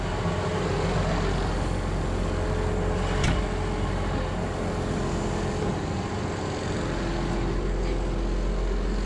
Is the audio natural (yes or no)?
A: yes